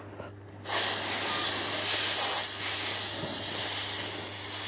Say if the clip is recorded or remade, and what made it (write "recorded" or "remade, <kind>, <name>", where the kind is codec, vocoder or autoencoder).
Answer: recorded